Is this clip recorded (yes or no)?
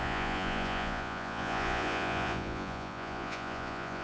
no